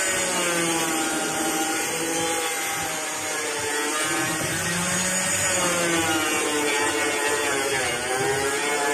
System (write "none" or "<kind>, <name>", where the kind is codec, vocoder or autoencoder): none